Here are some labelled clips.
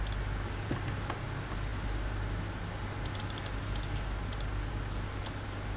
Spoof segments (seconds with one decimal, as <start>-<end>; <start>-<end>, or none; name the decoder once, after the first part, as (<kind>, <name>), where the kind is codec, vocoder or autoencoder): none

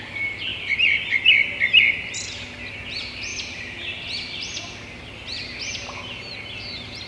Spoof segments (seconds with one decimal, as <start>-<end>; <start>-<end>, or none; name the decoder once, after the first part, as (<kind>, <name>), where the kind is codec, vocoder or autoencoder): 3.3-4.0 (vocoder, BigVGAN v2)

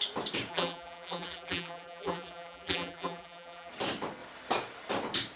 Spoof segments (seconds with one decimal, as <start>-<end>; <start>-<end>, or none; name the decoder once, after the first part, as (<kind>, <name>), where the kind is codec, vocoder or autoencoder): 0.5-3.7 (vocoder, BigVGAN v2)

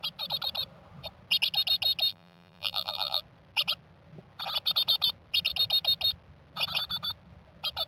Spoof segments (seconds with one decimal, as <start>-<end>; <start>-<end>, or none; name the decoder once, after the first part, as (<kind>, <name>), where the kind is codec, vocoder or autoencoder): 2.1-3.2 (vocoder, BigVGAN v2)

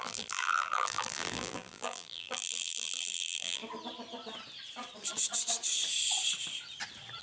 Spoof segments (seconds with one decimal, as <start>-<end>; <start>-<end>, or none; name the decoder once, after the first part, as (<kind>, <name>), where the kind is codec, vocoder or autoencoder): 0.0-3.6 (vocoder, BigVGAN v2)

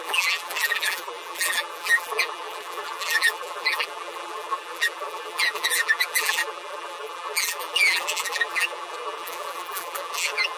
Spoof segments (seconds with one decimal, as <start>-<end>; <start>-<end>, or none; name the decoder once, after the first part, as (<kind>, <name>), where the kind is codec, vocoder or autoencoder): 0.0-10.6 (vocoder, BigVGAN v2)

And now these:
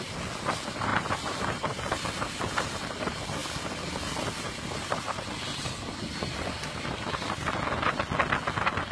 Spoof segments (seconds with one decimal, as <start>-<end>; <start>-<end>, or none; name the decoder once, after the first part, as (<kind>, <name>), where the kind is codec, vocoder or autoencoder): 0.9-1.6 (vocoder, BigVGAN v2)

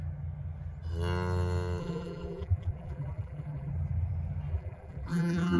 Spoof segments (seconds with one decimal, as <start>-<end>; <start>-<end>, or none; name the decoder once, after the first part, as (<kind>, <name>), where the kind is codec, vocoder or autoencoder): 1.8-3.7 (vocoder, BigVGAN v2); 4.5-5.6